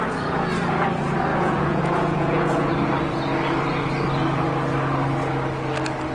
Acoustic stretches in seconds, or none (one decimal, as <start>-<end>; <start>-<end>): 0.0-1.3; 2.7-6.1